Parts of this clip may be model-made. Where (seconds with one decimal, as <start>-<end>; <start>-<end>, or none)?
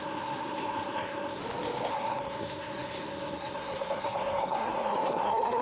0.0-1.4; 1.9-5.6